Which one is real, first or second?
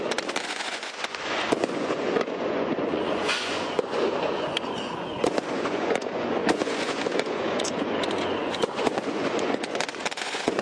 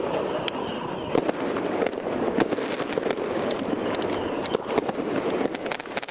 second